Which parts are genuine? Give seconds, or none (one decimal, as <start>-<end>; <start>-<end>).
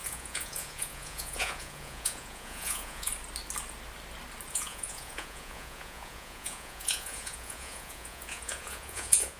3.1-4.5